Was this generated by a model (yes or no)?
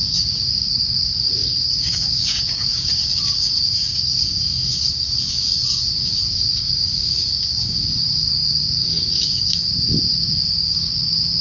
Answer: yes